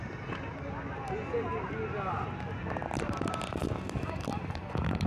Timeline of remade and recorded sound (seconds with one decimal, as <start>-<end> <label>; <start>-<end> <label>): 0.0-5.1 recorded

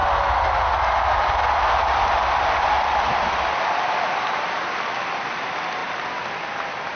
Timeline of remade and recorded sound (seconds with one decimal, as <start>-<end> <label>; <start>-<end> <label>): 0.0-7.0 recorded

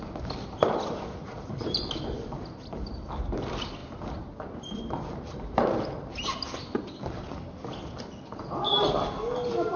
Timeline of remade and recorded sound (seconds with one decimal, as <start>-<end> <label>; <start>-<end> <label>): 0.0-9.8 recorded

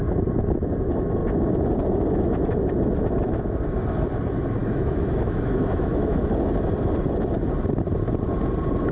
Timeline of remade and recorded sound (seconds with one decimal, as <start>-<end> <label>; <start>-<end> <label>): 0.0-4.6 recorded; 4.6-6.3 remade; 6.3-8.9 recorded

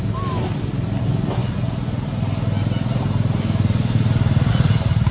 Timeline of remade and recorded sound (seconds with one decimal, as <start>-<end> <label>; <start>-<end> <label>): 0.0-5.1 recorded

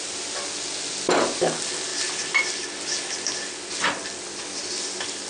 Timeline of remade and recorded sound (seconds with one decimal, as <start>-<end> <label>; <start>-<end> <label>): 0.0-5.3 recorded

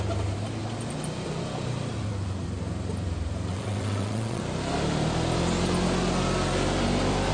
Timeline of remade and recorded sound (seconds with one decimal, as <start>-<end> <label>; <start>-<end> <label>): 0.0-3.5 recorded; 3.5-4.4 remade; 4.4-7.3 recorded